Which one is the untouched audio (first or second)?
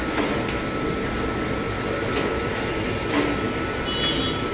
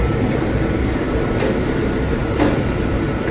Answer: first